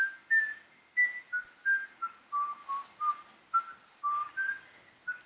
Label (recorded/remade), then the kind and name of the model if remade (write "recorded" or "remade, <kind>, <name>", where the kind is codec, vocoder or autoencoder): recorded